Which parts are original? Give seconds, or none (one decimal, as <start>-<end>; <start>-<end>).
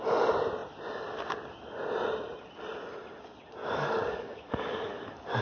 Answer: 0.0-3.6